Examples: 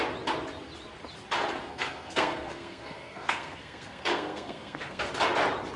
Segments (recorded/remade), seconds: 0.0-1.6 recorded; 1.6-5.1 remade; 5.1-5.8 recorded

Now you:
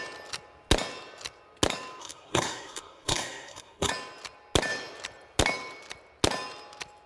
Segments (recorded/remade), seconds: 0.0-2.0 recorded; 2.0-3.9 remade; 3.9-7.1 recorded

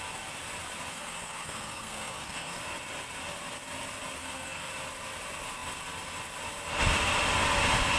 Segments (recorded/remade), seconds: 0.0-0.9 recorded; 0.9-2.6 remade; 2.6-4.2 recorded; 4.2-4.7 remade; 4.7-8.0 recorded

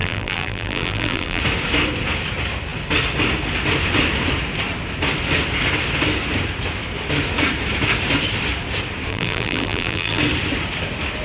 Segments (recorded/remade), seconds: 0.0-1.4 remade; 1.4-9.1 recorded; 9.1-10.2 remade; 10.2-11.2 recorded

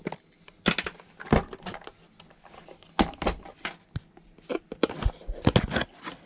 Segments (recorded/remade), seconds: 0.0-6.3 recorded

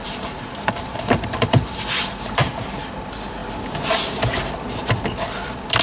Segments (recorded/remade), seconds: 0.0-2.5 remade; 2.5-5.8 recorded

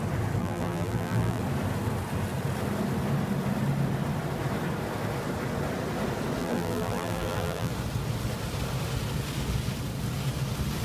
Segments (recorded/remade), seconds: 0.0-0.4 recorded; 0.4-1.4 remade; 1.4-6.4 recorded; 6.4-7.7 remade; 7.7-10.8 recorded